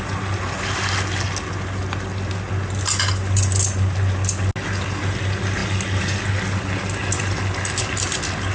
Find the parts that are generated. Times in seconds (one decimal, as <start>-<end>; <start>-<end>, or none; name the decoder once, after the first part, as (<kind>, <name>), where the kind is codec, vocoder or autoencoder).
none